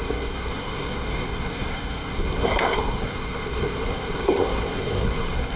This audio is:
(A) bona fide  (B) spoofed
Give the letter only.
B